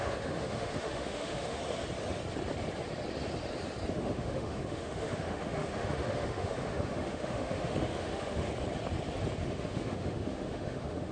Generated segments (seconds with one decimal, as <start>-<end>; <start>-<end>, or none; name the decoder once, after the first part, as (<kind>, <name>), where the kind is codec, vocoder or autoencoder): 0.0-1.6 (autoencoder, DAC-VAE); 3.9-8.5; 9.4-11.1